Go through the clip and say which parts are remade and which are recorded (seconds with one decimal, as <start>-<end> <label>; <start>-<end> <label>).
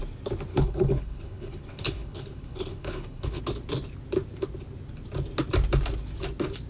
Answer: 0.0-0.5 recorded; 0.5-3.4 remade; 3.4-6.7 recorded